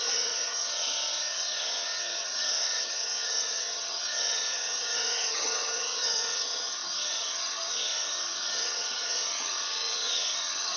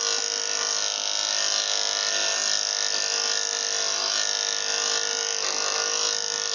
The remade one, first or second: first